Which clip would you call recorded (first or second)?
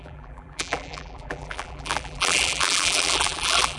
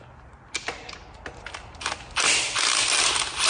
second